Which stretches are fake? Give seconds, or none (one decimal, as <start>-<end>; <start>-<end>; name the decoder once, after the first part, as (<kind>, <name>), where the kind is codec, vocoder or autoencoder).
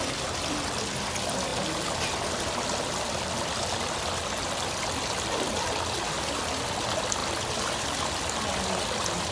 none